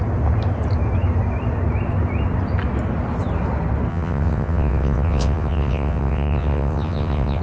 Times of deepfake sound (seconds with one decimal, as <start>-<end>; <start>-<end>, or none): 3.9-7.4